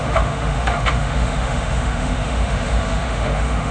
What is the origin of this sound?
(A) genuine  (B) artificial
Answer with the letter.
B